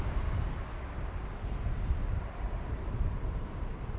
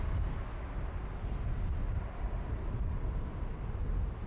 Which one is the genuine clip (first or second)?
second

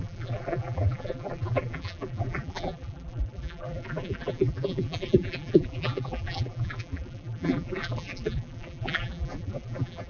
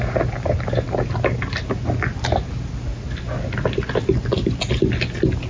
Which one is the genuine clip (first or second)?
second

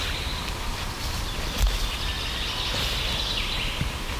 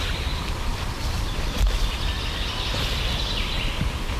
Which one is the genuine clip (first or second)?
first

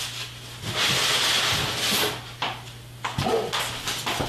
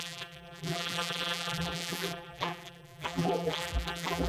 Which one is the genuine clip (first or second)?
first